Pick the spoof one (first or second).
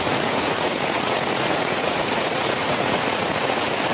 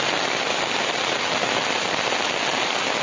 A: first